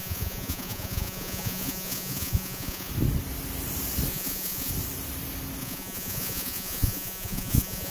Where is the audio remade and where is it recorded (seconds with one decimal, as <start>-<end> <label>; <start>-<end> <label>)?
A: 0.0-2.9 remade; 2.9-4.1 recorded; 4.1-4.7 remade; 4.7-5.6 recorded; 5.6-7.9 remade

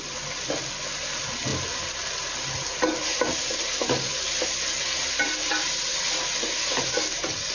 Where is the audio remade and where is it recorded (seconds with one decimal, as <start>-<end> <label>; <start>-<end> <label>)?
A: 0.0-7.5 recorded

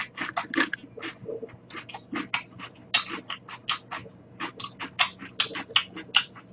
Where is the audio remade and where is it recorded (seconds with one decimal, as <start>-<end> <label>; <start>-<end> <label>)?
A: 0.0-6.5 recorded

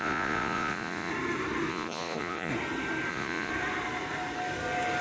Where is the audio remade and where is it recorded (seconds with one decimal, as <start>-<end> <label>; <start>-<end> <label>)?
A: 0.0-1.1 remade; 1.1-1.7 recorded; 1.7-2.5 remade; 2.5-3.1 recorded; 3.1-3.5 remade; 3.5-5.0 recorded

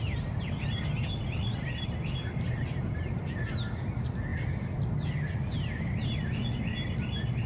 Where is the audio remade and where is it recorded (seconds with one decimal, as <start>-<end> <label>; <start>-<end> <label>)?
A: 0.0-7.5 recorded

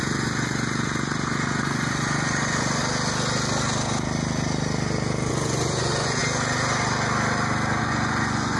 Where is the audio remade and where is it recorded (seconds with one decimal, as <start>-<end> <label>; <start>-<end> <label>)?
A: 0.0-2.8 remade; 2.8-5.3 recorded; 5.3-6.2 remade; 6.2-7.8 recorded; 7.8-8.6 remade

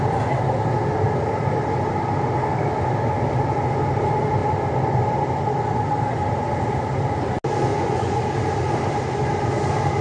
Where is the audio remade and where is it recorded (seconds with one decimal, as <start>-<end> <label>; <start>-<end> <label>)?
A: 0.0-7.7 recorded; 7.7-8.2 remade; 8.2-10.0 recorded